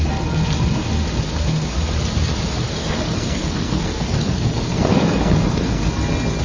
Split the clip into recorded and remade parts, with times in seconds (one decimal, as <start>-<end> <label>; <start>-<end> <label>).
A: 0.0-2.7 recorded; 2.7-5.9 remade; 5.9-6.4 recorded